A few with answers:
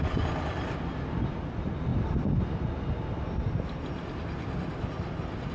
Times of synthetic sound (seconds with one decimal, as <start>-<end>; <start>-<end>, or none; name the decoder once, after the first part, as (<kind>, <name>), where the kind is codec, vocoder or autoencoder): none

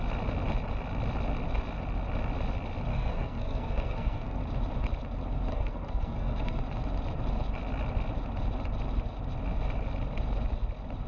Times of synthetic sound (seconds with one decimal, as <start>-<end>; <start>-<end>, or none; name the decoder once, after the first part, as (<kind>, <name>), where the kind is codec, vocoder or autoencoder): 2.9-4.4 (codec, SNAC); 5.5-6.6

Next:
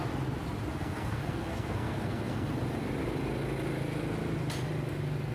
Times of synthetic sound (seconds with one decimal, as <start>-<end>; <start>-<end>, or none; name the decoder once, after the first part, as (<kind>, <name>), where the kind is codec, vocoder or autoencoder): 0.7-2.5 (codec, SNAC)